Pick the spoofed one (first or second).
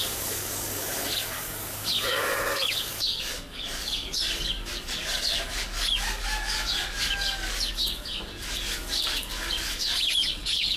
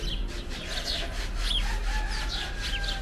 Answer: first